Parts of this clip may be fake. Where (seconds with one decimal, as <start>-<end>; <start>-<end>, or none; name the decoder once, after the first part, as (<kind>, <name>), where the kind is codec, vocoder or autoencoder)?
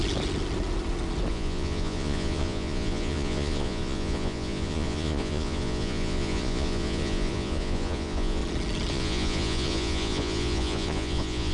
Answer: 1.3-8.4 (vocoder, Vocos); 8.9-11.5